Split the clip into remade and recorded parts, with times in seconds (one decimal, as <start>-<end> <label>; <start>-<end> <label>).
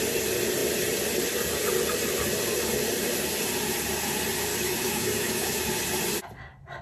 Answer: 0.0-4.5 recorded; 4.5-5.6 remade; 5.6-6.8 recorded